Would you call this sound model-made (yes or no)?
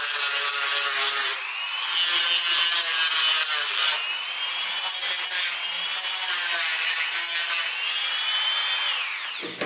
no